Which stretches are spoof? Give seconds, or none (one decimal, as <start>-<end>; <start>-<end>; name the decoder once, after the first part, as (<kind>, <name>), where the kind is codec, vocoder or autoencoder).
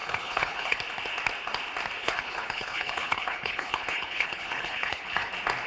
0.0-0.8 (codec, HILCodec); 2.0-5.3